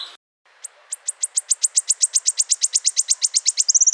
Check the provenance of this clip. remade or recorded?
recorded